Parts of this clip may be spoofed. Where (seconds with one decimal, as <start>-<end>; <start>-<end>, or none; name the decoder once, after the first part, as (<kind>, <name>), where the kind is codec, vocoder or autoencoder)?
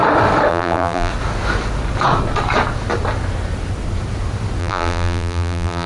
0.5-1.1 (vocoder, BigVGAN v2); 4.6-5.9